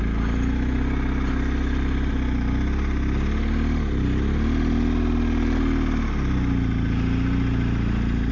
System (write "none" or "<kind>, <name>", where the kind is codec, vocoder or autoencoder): none